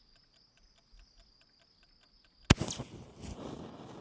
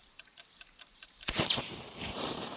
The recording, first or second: first